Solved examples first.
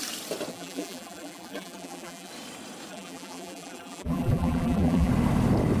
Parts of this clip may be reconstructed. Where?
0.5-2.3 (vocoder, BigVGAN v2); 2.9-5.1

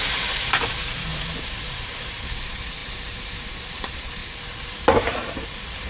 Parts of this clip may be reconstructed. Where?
0.0-4.2 (vocoder, BigVGAN v2); 4.7-5.9